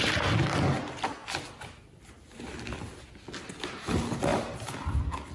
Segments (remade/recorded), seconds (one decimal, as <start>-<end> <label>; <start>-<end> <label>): 0.0-5.3 recorded